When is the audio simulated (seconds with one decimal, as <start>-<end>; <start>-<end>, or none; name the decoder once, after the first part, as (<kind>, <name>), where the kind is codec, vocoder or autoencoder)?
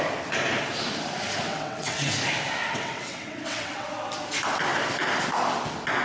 1.5-2.1 (vocoder, WaveNeXt); 2.6-3.9